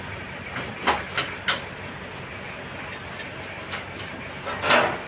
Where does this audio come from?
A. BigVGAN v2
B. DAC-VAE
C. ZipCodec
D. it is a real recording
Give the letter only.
D